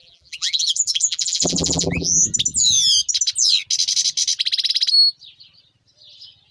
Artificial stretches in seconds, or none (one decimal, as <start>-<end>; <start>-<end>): 0.0-2.2